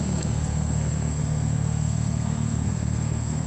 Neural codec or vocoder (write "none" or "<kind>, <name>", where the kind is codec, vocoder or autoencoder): codec, SNAC